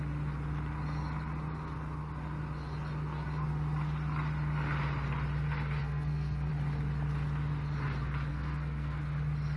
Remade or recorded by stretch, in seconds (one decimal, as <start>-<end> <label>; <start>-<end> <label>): 0.0-5.8 recorded; 5.8-6.5 remade; 6.5-8.3 recorded; 8.3-9.0 remade; 9.0-9.6 recorded